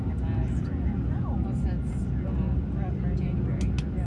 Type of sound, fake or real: real